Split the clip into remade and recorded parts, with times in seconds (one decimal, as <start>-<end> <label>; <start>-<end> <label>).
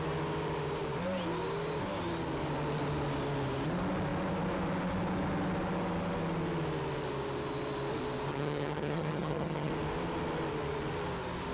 0.0-8.3 recorded; 8.3-9.7 remade; 9.7-11.5 recorded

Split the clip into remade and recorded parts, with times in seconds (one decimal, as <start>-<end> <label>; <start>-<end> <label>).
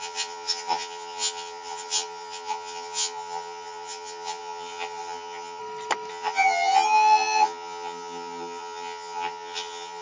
0.0-5.6 remade; 5.6-6.1 recorded; 6.1-10.0 remade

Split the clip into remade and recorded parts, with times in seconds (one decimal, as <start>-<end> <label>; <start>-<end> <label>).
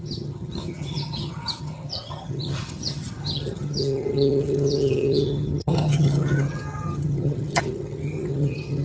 0.0-8.8 remade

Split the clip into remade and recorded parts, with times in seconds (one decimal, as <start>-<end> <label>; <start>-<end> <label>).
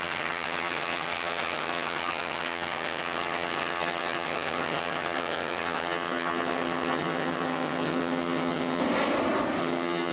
0.0-8.8 remade; 8.8-9.6 recorded; 9.6-10.1 remade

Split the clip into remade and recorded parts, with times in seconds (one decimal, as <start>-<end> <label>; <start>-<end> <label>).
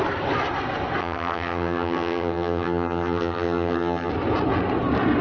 0.0-1.0 recorded; 1.0-4.1 remade; 4.1-5.2 recorded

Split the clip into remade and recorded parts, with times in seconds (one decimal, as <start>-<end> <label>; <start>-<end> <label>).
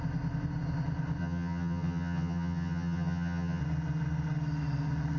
0.0-1.2 recorded; 1.2-3.6 remade; 3.6-5.2 recorded